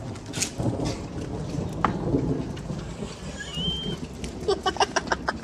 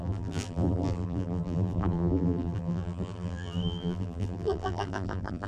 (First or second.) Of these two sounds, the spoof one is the second